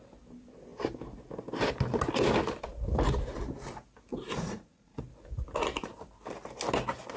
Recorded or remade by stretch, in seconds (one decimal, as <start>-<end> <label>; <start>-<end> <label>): 0.0-4.1 recorded; 4.1-5.0 remade; 5.0-7.2 recorded